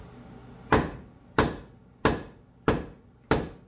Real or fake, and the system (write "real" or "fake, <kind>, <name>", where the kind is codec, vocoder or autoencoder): real